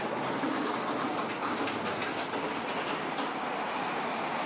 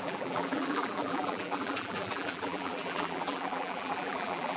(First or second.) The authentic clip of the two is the first